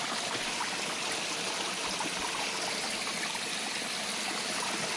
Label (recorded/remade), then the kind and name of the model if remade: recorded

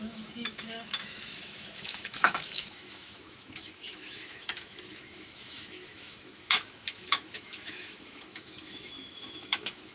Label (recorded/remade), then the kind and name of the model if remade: remade, autoencoder, DAC-VAE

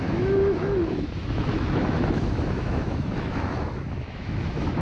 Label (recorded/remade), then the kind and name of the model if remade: remade, autoencoder, DAC-VAE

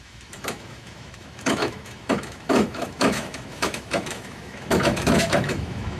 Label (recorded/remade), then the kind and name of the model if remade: remade, autoencoder, DAC-VAE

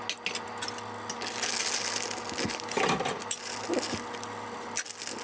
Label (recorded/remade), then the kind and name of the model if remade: recorded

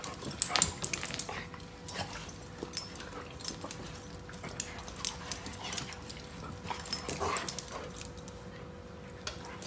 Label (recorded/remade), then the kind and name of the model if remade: recorded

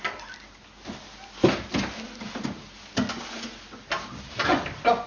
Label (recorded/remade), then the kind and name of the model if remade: recorded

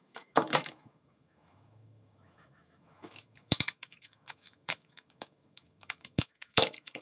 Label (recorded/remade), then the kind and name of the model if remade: remade, autoencoder, DAC-VAE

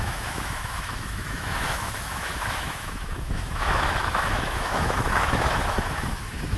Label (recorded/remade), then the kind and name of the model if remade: remade, autoencoder, DAC-VAE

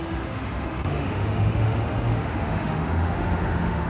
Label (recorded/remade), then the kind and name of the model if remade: remade, autoencoder, DAC-VAE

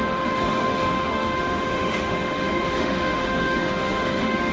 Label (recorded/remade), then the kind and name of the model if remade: remade, autoencoder, DAC-VAE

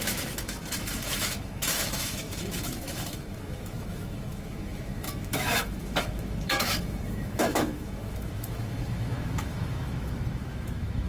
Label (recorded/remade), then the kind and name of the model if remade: remade, autoencoder, DAC-VAE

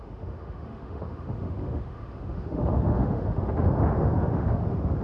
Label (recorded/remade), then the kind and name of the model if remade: remade, autoencoder, DAC-VAE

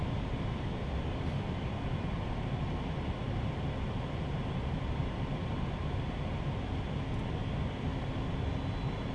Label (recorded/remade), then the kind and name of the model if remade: recorded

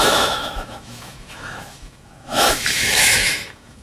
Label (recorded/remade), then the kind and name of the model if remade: remade, autoencoder, DAC-VAE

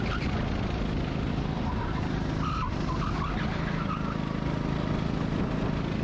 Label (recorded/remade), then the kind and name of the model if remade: recorded